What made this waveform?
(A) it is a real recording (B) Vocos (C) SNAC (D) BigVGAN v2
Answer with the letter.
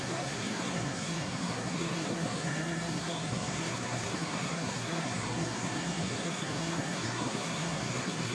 C